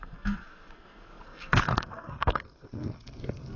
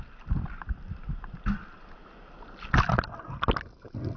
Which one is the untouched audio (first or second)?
second